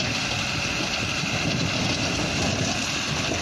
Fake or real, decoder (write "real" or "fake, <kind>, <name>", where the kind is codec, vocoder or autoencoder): real